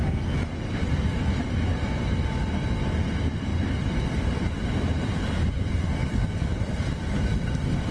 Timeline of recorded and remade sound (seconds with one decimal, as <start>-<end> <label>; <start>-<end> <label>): 0.0-3.5 recorded; 3.5-4.9 remade; 4.9-6.0 recorded; 6.0-7.0 remade; 7.0-7.9 recorded

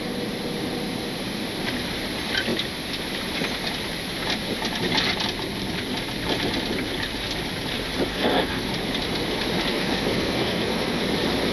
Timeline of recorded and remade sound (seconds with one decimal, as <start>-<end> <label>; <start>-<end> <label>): 0.0-8.1 recorded; 8.1-8.7 remade; 8.7-9.7 recorded; 9.7-11.0 remade; 11.0-11.5 recorded

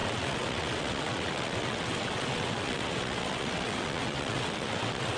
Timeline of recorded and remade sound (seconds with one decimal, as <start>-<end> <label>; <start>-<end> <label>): 0.0-5.2 remade

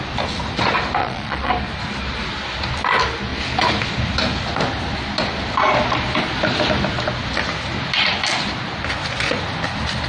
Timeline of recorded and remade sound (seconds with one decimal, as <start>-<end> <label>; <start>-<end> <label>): 0.0-1.0 recorded; 1.0-1.5 remade; 1.5-10.1 recorded

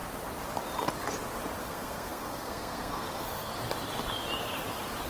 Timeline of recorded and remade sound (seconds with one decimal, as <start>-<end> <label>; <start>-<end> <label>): 0.0-1.6 recorded; 1.6-3.5 remade; 3.5-5.1 recorded

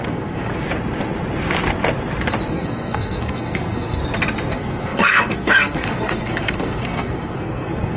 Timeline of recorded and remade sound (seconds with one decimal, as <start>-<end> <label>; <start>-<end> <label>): 0.0-0.5 remade; 0.5-2.5 recorded; 2.5-4.0 remade; 4.0-4.5 recorded; 4.5-8.0 remade